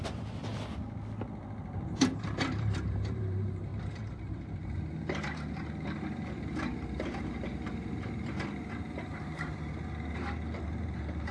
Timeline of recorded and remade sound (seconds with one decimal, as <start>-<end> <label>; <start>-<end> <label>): 0.0-0.5 remade; 0.5-2.0 recorded; 2.0-11.3 remade